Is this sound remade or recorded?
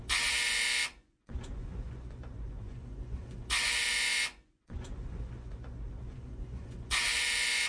remade